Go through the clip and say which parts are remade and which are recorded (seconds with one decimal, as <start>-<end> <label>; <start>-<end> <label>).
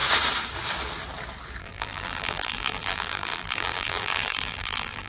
0.0-1.6 recorded; 1.6-5.1 remade